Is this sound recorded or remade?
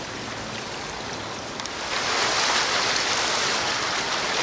remade